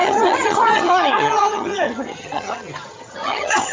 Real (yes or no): no